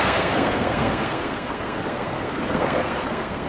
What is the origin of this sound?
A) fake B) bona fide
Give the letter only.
A